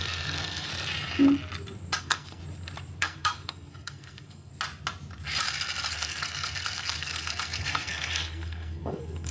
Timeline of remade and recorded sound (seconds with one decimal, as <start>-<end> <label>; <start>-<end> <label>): 0.0-0.7 remade; 0.7-2.0 recorded; 2.0-2.4 remade; 2.4-3.0 recorded; 3.0-4.5 remade; 4.5-5.9 recorded; 5.9-9.3 remade